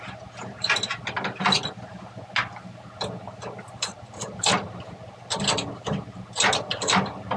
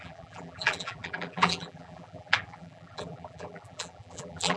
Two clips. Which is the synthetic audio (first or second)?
second